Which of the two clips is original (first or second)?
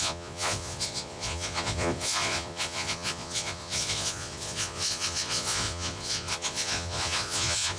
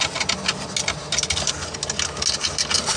second